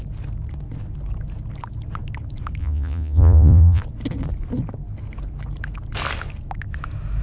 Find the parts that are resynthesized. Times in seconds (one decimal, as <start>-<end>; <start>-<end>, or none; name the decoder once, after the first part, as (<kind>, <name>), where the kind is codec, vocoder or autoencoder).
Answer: 2.6-3.8 (vocoder, Vocos)